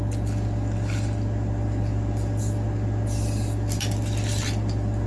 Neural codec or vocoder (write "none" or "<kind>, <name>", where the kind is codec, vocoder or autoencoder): none